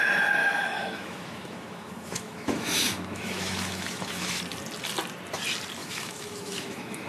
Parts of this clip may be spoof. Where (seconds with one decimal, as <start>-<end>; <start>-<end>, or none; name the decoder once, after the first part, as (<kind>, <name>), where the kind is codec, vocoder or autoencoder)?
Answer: 0.4-4.4 (autoencoder, DAC-VAE); 5.8-7.1